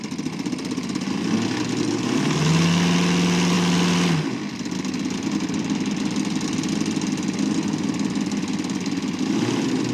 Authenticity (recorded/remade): recorded